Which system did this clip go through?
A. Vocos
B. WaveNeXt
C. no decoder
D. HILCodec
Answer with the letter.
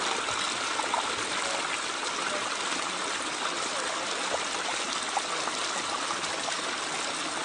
C